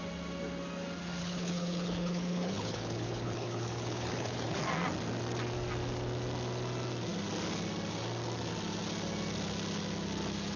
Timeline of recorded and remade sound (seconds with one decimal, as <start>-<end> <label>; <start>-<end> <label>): 0.0-1.2 recorded; 1.2-4.6 remade; 4.6-10.6 recorded